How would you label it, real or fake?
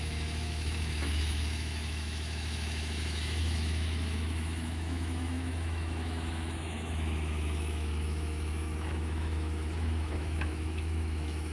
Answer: fake